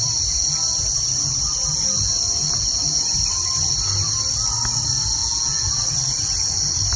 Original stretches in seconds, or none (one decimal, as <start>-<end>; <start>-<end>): 0.0-5.2; 5.7-7.0